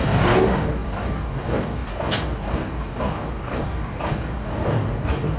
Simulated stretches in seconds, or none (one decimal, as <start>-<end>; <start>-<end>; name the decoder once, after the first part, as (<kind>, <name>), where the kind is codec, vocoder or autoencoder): 0.0-5.4 (codec, DAC)

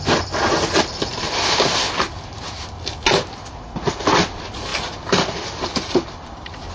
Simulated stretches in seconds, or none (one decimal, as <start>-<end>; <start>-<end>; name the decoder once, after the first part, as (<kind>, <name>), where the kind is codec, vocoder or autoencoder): 4.7-6.7 (vocoder, BigVGAN v2)